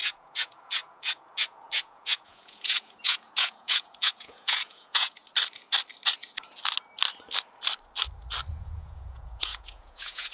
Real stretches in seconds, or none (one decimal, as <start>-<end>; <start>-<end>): 5.2-8.5